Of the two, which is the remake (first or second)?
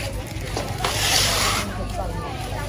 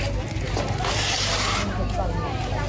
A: first